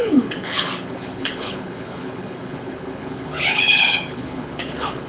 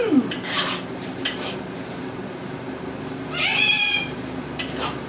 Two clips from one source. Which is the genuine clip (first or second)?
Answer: second